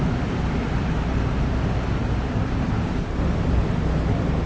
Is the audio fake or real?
fake